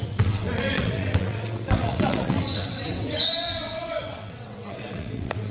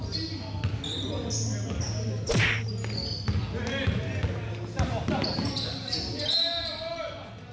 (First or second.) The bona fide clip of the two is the second